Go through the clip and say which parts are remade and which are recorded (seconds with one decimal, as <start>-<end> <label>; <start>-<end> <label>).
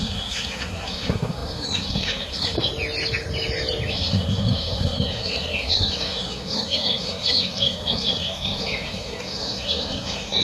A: 0.0-2.7 remade; 2.7-3.9 recorded; 3.9-10.4 remade